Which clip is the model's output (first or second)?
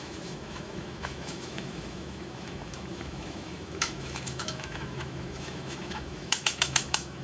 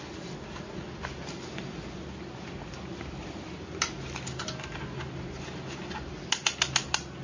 first